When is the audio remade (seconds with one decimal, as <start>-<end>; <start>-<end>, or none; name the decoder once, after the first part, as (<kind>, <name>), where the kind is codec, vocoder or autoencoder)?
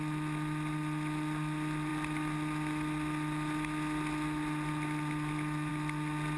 none